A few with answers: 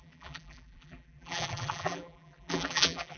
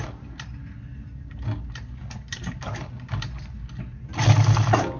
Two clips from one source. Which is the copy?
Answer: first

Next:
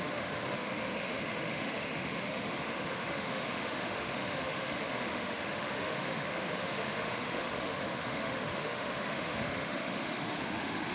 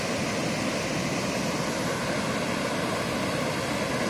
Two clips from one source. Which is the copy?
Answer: first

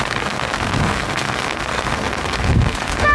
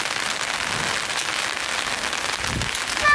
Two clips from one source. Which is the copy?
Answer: first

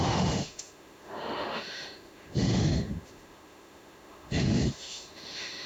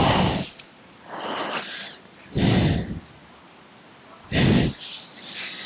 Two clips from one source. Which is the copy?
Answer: first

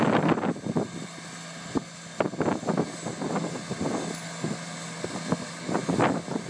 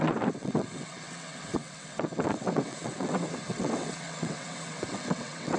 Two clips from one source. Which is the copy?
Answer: second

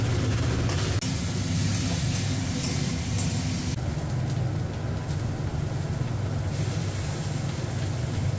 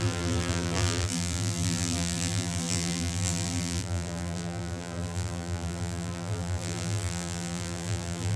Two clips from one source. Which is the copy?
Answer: second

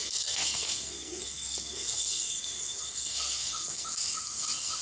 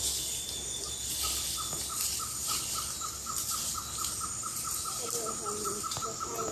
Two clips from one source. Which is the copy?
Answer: first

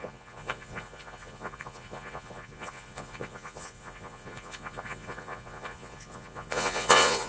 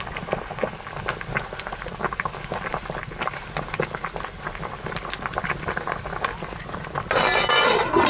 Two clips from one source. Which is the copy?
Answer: first